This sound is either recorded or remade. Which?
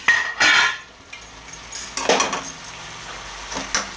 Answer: recorded